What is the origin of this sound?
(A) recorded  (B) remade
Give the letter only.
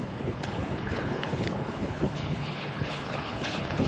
B